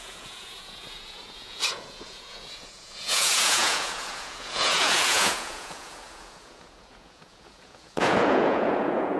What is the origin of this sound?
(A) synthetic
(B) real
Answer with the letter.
A